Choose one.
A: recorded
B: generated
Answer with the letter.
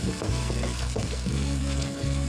B